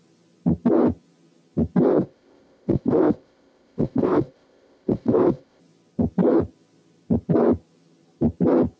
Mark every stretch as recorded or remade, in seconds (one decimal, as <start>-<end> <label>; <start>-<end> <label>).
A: 0.0-1.9 recorded; 1.9-5.6 remade; 5.6-8.8 recorded